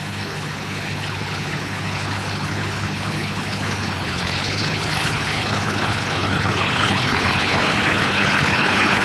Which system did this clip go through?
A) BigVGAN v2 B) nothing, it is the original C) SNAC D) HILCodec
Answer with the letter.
D